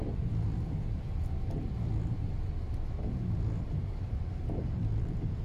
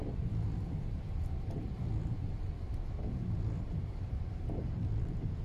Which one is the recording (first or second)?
first